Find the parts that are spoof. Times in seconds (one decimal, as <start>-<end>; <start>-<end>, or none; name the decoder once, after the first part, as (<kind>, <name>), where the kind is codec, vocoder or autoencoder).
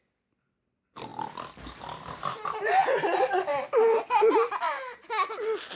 none